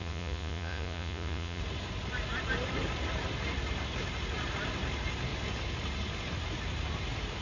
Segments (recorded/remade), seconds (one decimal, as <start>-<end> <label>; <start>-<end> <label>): 0.0-1.6 remade; 1.6-7.4 recorded